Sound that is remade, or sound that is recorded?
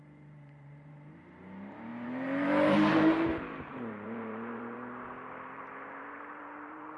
remade